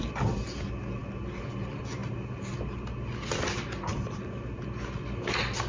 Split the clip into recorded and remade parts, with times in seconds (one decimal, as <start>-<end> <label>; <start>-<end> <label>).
0.0-5.7 recorded